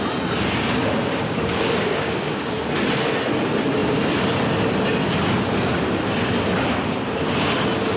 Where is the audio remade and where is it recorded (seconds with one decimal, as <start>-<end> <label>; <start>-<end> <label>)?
0.0-1.2 recorded; 1.2-2.6 remade; 2.6-8.0 recorded